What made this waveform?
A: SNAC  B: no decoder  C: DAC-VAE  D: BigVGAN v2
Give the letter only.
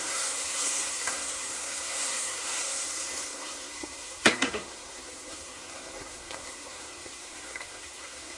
A